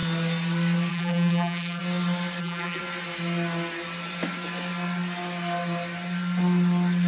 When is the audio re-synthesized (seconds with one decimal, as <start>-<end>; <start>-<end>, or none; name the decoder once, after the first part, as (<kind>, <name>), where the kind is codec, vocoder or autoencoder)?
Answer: 0.9-1.8 (vocoder, BigVGAN v2); 2.4-2.8